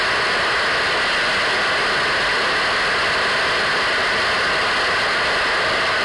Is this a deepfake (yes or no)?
no